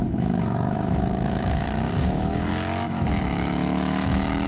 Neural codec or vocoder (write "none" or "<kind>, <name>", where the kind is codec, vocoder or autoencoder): autoencoder, DAC-VAE